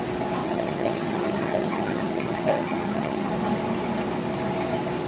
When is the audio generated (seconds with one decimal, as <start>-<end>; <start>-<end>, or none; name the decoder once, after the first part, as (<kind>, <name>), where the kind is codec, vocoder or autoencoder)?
0.4-3.3 (vocoder, HiFi-GAN)